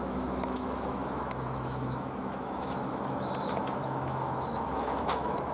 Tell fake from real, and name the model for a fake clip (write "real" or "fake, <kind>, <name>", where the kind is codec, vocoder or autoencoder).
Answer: fake, autoencoder, DAC-VAE